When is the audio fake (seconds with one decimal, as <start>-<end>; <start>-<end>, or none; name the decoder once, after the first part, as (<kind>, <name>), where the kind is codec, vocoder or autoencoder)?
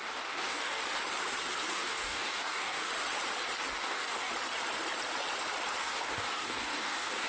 0.0-0.8 (codec, DAC); 1.7-2.9; 3.7-4.3; 5.8-7.3